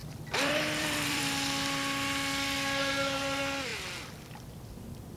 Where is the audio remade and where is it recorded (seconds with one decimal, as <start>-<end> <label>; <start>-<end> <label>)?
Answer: 0.0-1.2 remade; 1.2-5.2 recorded